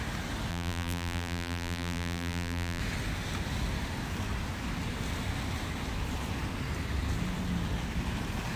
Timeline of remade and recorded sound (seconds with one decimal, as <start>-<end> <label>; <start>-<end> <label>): 0.0-0.5 recorded; 0.5-2.8 remade; 2.8-8.6 recorded